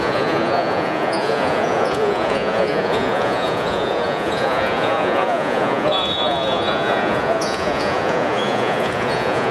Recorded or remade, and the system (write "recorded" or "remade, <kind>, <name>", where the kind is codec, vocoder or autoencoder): remade, vocoder, Vocos